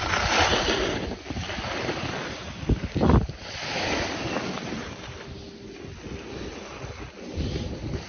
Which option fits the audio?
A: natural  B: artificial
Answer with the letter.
A